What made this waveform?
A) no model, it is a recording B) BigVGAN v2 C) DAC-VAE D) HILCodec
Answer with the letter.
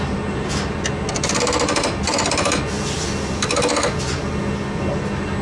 A